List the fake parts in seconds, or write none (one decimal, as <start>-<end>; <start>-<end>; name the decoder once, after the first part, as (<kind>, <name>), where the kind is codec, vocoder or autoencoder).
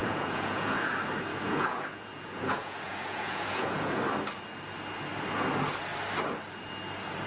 0.0-0.8 (vocoder, Vocos); 1.3-4.0